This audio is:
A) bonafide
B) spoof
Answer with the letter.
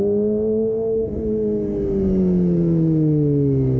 A